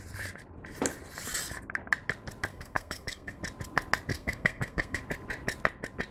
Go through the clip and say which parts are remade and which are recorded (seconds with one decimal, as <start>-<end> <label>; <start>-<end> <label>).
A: 0.0-2.5 recorded; 2.5-3.4 remade; 3.4-4.1 recorded; 4.1-5.0 remade; 5.0-6.1 recorded